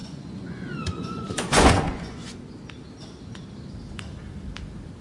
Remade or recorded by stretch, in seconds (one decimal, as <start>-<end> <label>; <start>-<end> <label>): 0.0-2.4 remade; 2.4-5.0 recorded